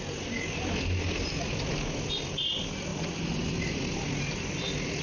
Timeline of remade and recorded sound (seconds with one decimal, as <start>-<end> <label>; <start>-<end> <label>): 0.0-5.0 recorded